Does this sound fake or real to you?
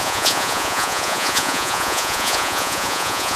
fake